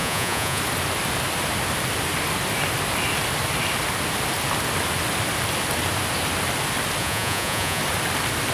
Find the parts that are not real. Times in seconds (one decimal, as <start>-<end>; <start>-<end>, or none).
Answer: 0.0-0.6; 7.0-7.8